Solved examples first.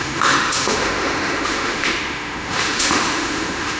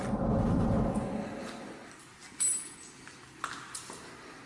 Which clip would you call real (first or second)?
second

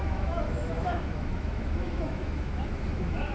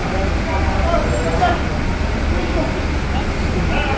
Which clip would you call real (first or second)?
second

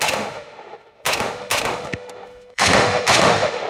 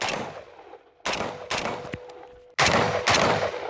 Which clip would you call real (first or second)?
second